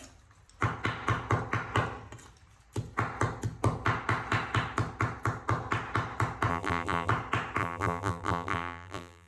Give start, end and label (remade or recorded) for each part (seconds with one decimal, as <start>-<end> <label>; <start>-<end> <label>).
0.0-6.5 recorded; 6.5-7.1 remade; 7.1-7.6 recorded; 7.6-9.3 remade